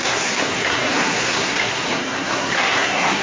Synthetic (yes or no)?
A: yes